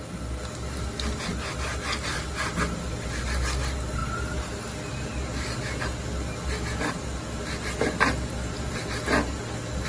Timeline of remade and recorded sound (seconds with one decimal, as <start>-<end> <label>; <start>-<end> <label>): 0.0-9.9 recorded